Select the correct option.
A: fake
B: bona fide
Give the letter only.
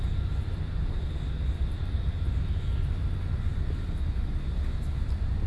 B